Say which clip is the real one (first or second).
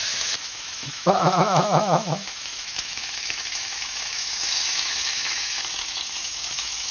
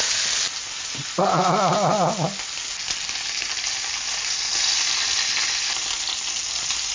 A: second